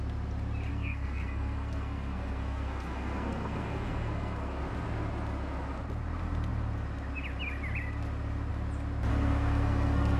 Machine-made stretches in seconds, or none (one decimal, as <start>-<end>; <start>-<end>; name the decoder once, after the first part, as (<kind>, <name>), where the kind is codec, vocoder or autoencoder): 0.7-4.6 (codec, SNAC); 9.1-10.2